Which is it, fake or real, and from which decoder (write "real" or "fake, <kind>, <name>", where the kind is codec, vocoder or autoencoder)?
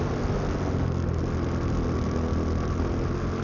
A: real